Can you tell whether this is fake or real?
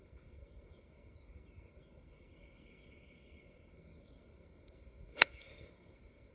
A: fake